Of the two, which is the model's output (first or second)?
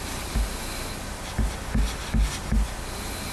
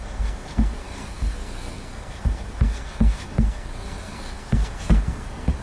second